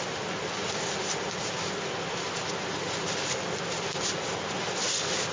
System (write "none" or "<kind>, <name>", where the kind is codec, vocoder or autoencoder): none